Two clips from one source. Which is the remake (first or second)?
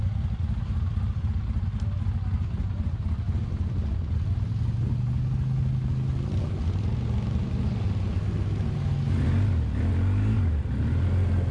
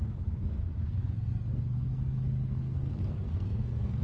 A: second